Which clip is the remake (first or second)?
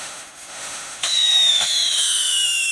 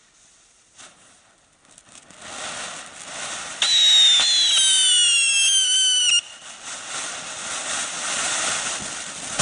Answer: first